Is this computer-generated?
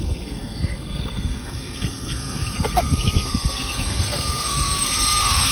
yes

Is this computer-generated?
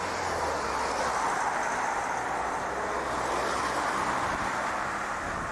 no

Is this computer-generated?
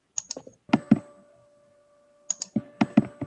no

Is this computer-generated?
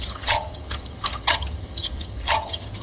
yes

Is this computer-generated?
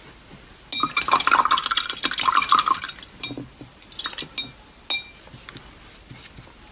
no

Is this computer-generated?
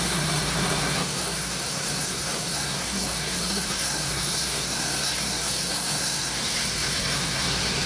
yes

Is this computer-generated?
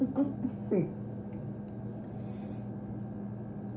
no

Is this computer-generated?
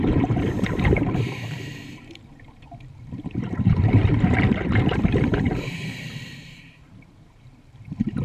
yes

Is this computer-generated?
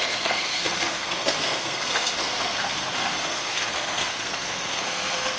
yes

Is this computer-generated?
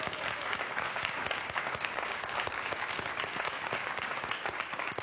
yes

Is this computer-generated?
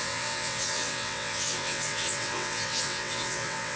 yes